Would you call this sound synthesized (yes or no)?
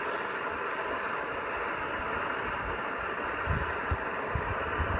no